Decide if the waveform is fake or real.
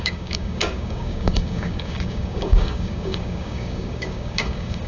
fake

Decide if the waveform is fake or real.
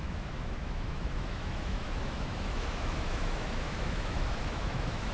fake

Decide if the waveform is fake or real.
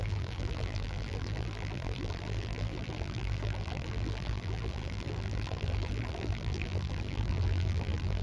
fake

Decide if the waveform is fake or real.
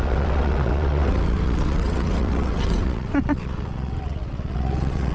fake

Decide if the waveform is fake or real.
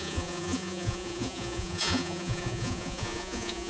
fake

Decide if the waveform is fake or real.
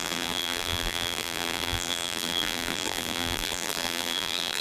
fake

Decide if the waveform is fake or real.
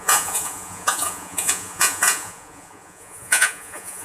fake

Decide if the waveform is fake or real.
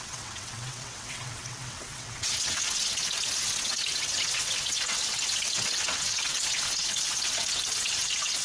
fake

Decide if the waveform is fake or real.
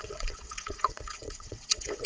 fake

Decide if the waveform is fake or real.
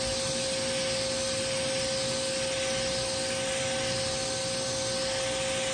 real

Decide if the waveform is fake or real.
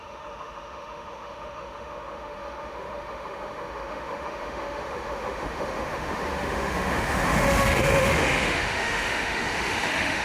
fake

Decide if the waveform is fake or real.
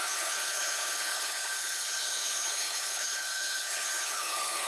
fake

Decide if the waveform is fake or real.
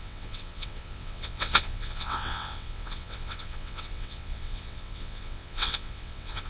fake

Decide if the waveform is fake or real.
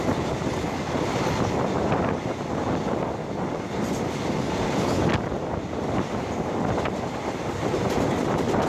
real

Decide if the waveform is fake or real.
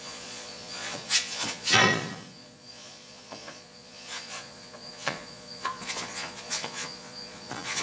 fake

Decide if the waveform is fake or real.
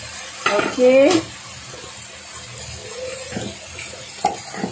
real